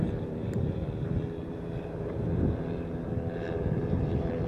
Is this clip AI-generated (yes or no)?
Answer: yes